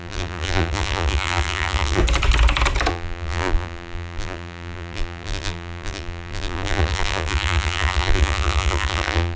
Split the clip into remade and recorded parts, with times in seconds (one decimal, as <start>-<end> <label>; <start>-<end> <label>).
0.0-2.0 remade; 2.0-2.9 recorded; 2.9-9.4 remade